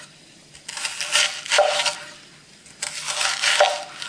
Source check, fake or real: real